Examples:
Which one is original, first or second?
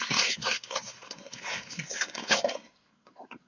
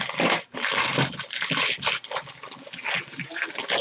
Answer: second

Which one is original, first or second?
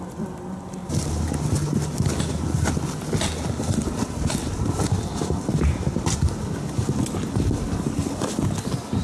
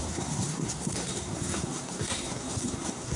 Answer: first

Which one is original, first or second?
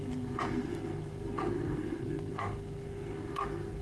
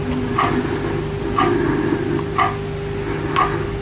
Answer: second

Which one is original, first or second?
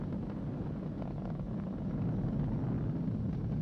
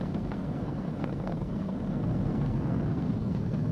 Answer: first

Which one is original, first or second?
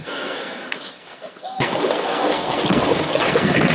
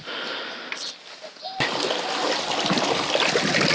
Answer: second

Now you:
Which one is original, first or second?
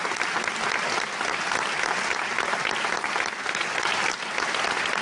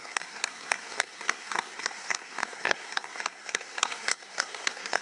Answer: first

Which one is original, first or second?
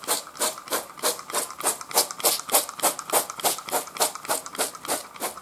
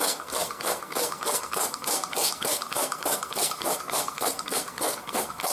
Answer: first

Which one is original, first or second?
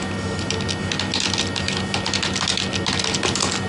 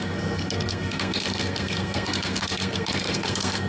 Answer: first